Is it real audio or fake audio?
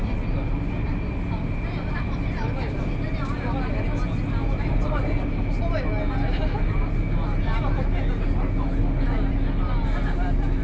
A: real